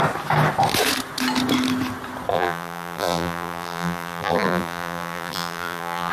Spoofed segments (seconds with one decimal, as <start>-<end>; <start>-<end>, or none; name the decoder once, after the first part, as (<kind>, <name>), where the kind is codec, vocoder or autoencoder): 2.3-6.1 (vocoder, BigVGAN v2)